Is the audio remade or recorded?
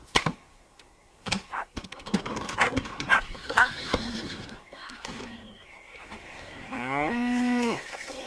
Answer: remade